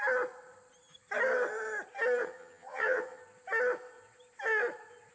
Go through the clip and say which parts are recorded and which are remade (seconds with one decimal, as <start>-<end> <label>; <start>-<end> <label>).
0.0-2.2 recorded; 2.2-3.2 remade; 3.2-5.1 recorded